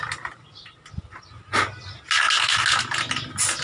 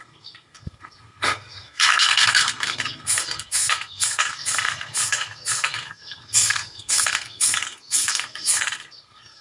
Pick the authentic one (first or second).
first